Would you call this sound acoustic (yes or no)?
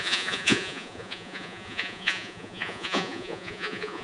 no